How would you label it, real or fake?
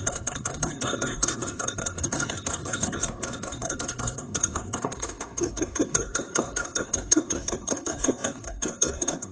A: fake